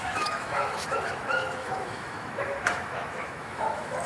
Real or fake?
fake